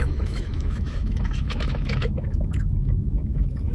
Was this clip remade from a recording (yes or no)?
yes